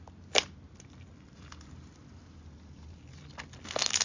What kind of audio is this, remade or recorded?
recorded